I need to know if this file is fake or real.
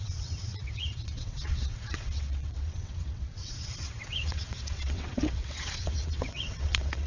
fake